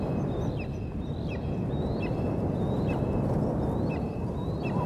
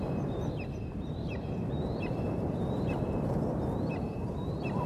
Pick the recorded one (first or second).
first